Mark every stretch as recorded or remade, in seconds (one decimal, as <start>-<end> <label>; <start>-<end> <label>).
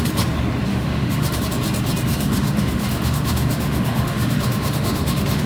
0.0-0.7 recorded; 0.7-1.4 remade; 1.4-2.1 recorded; 2.1-5.5 remade